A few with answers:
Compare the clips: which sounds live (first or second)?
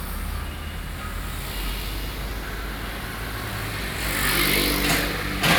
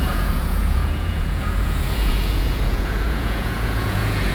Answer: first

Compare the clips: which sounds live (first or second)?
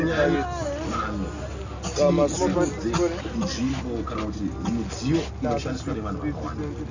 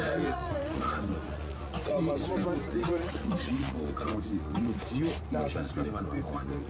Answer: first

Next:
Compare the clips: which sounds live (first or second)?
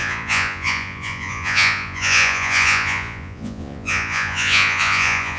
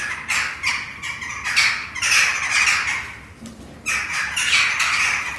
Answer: second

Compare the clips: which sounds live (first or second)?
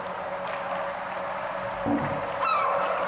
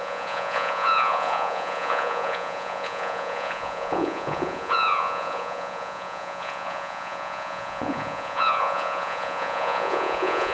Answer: first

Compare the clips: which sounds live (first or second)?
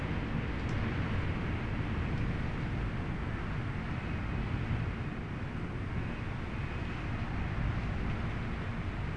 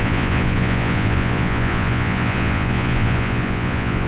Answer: first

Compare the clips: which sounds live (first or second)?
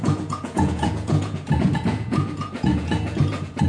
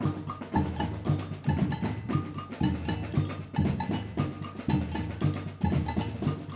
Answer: second